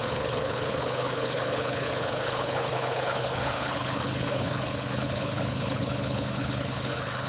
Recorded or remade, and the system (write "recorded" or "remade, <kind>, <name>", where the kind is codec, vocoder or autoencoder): remade, codec, HILCodec